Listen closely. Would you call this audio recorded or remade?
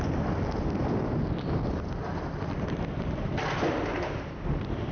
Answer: recorded